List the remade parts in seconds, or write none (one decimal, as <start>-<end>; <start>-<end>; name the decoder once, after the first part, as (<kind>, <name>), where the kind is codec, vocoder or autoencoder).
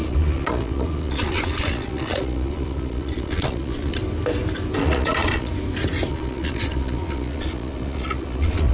0.0-4.0 (vocoder, Vocos); 4.8-5.5; 6.1-8.7